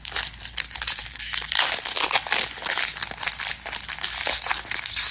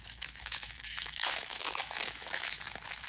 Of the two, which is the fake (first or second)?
second